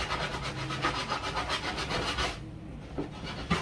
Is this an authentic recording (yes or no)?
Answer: yes